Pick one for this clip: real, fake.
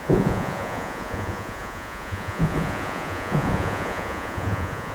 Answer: fake